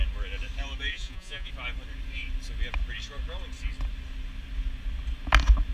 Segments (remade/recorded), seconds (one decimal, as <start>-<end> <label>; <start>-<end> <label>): 0.0-0.9 recorded; 0.9-1.5 remade; 1.5-5.7 recorded